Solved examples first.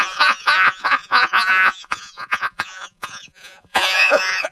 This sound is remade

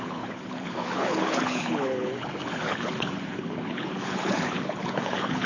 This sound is remade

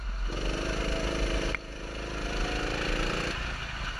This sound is recorded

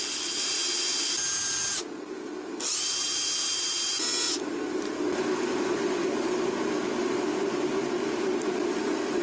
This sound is recorded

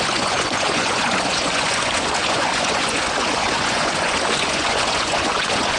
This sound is remade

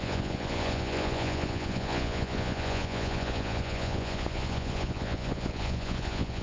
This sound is remade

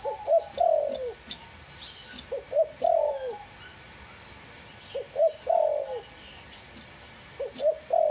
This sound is recorded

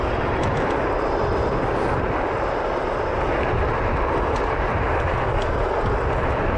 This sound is recorded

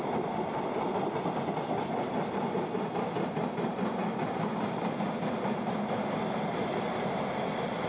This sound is recorded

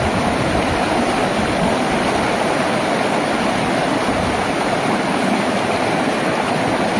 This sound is recorded